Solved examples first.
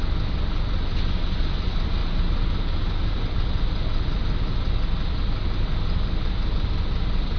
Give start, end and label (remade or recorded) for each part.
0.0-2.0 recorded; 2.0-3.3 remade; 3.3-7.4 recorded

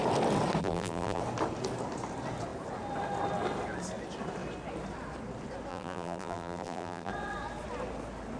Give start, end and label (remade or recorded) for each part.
0.0-0.6 recorded; 0.6-1.2 remade; 1.2-5.7 recorded; 5.7-7.1 remade; 7.1-8.4 recorded